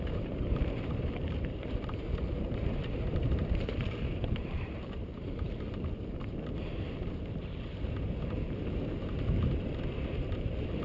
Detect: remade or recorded remade